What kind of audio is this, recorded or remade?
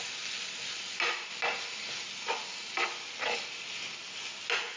recorded